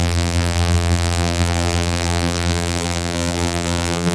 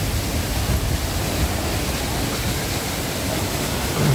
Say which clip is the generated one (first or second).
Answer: first